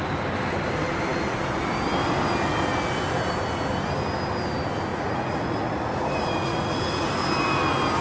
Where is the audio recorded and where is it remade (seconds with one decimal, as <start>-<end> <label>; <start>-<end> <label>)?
0.0-4.9 recorded; 4.9-7.1 remade; 7.1-8.0 recorded